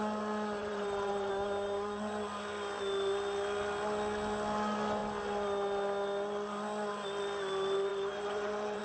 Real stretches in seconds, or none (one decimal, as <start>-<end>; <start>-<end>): 0.0-0.6; 1.3-7.9